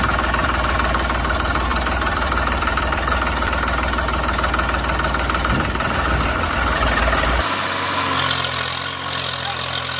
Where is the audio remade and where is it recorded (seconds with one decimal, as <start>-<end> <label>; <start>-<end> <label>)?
0.0-1.7 recorded; 1.7-3.1 remade; 3.1-10.0 recorded